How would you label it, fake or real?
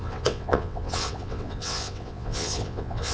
fake